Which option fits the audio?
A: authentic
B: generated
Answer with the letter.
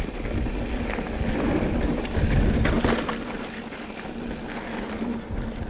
A